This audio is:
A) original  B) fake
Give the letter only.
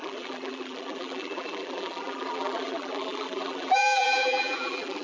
B